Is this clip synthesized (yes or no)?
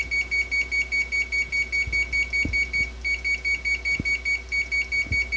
no